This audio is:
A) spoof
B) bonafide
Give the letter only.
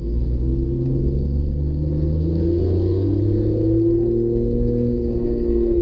A